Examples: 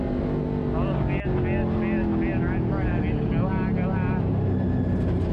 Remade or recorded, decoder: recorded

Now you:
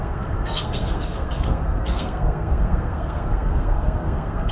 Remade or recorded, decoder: remade, codec, SNAC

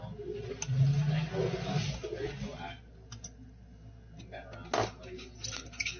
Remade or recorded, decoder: recorded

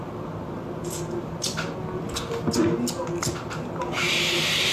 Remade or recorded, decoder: recorded